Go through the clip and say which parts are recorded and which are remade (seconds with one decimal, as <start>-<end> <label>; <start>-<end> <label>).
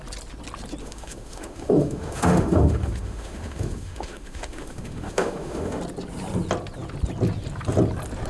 0.0-0.8 recorded; 0.8-5.8 remade; 5.8-8.3 recorded